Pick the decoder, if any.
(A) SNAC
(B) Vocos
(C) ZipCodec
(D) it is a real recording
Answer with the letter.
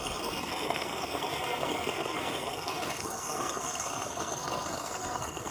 A